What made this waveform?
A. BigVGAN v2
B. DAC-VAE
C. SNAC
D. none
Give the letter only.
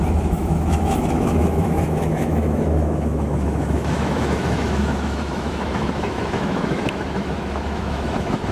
B